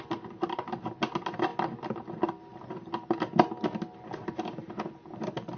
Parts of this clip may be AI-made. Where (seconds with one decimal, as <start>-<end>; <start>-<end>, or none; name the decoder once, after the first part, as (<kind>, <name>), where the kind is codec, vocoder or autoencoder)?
none